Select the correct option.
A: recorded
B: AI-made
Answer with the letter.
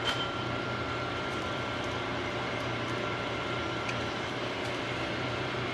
B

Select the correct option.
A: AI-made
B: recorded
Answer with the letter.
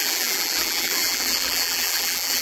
A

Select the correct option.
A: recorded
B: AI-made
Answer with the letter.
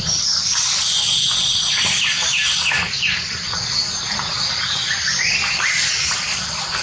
A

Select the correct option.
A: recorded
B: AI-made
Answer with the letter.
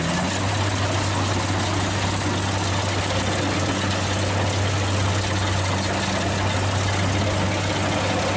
A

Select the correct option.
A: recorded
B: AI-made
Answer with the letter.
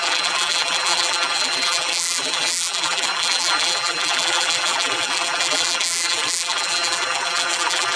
B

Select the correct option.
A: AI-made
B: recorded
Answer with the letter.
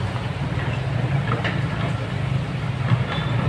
B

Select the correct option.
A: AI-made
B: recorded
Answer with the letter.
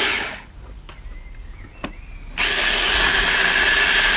B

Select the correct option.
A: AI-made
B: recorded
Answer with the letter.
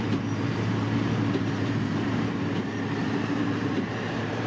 A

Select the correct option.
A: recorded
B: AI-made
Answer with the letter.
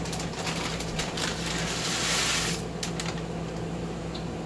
A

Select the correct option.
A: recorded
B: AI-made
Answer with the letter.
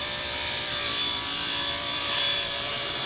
B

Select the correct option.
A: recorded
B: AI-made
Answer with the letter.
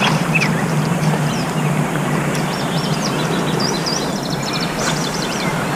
B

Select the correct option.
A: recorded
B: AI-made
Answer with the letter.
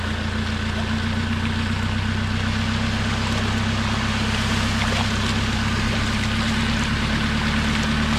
A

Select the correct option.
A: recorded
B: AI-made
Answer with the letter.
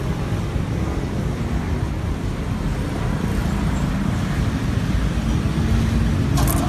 A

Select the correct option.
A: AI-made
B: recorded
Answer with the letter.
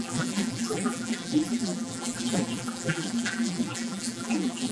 A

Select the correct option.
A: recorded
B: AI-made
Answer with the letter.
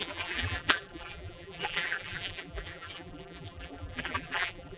B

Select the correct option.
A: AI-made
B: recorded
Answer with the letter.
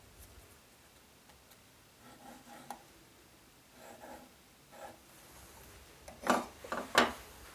B